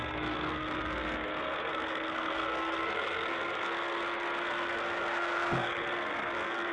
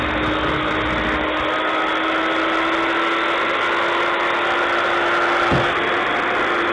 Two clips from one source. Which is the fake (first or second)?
first